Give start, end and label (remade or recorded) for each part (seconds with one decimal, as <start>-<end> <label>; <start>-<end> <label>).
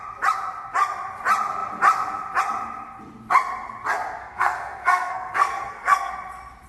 0.0-4.2 recorded; 4.2-6.1 remade; 6.1-6.7 recorded